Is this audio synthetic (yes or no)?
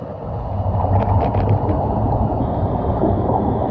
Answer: no